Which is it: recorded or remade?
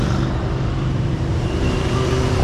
remade